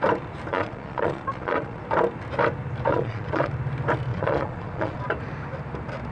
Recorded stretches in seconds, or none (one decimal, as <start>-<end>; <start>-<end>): 0.0-0.5; 1.8-2.9; 3.5-4.1; 5.0-6.1